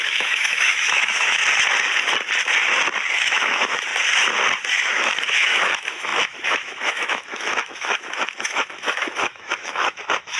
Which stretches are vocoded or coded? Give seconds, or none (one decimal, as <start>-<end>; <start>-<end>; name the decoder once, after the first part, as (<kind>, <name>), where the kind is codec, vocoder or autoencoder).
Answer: 0.0-1.4 (autoencoder, DAC-VAE); 3.1-3.9; 4.7-10.4